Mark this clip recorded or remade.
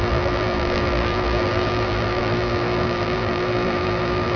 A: remade